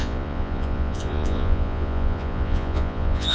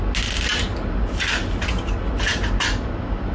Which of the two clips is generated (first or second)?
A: first